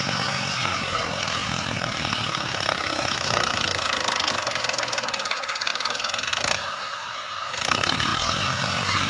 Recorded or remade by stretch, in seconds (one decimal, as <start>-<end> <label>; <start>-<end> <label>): 0.0-9.1 remade